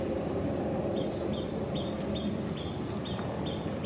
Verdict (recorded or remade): recorded